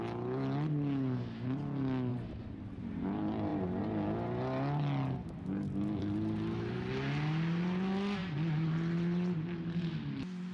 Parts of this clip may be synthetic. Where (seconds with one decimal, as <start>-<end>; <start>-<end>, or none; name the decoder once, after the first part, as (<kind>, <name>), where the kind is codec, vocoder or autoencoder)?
2.1-2.6 (vocoder, BigVGAN v2)